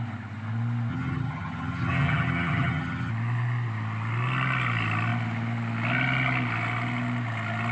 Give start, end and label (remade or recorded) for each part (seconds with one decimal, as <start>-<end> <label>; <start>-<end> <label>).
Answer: 0.0-0.9 recorded; 0.9-3.1 remade; 3.1-7.7 recorded